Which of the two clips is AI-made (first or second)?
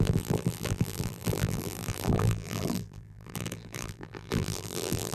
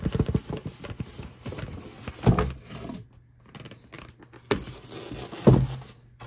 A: first